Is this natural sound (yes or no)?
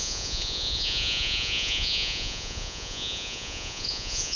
no